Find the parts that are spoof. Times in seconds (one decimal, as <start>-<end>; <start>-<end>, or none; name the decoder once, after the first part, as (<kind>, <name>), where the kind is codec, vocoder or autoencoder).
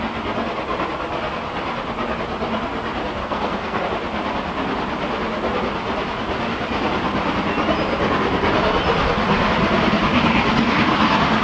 3.2-3.8 (codec, SNAC)